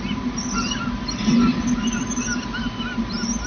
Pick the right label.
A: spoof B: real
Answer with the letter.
A